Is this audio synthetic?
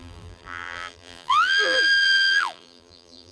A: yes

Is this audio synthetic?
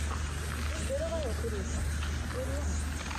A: no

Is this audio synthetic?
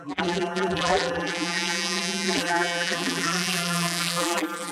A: yes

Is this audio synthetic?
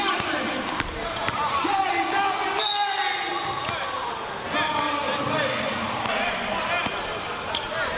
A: no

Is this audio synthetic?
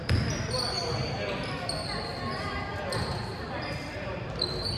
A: yes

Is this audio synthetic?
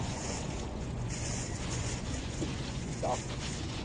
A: yes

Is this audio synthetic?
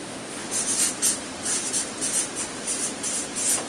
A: no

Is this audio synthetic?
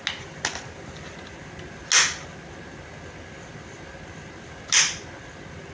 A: no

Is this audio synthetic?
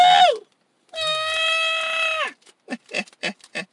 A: no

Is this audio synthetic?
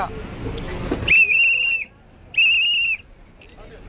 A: no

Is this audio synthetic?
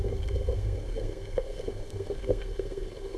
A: yes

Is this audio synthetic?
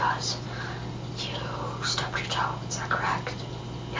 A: no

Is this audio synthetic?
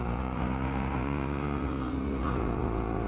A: yes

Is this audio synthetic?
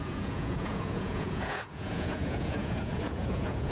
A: yes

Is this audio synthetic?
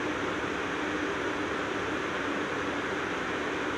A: no